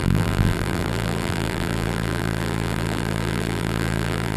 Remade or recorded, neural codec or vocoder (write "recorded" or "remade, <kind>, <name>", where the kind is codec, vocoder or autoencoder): remade, vocoder, BigVGAN v2